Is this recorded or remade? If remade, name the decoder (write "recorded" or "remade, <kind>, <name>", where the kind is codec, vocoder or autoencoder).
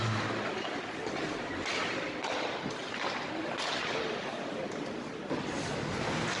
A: recorded